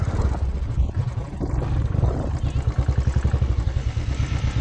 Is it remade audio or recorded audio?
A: recorded